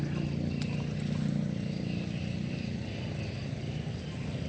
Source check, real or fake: real